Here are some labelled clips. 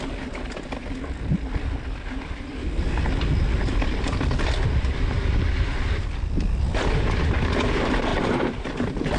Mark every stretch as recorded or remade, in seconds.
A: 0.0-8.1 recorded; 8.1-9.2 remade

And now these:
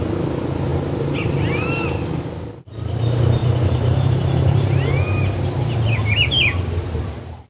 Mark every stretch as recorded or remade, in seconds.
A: 0.0-3.4 recorded; 3.4-4.7 remade; 4.7-7.5 recorded